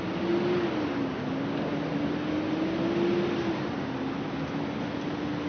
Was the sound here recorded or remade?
recorded